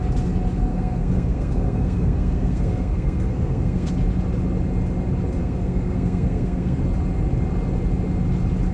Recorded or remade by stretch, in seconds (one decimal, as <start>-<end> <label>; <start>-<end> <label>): 0.0-0.7 recorded; 0.7-3.9 remade; 3.9-5.4 recorded; 5.4-6.8 remade; 6.8-8.7 recorded